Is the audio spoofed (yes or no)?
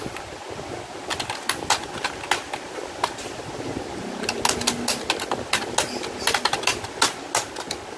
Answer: no